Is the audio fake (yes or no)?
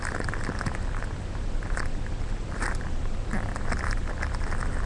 no